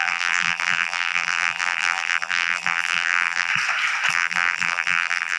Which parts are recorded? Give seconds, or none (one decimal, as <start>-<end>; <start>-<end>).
3.5-4.1